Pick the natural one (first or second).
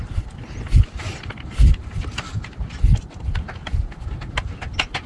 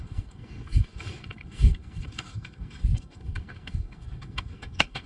first